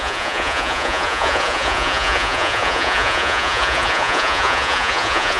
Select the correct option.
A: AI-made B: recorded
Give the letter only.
A